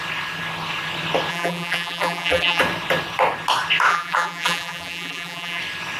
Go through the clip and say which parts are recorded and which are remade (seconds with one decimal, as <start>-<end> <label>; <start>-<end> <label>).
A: 0.0-1.3 recorded; 1.3-2.6 remade; 2.6-3.9 recorded; 3.9-5.6 remade; 5.6-6.0 recorded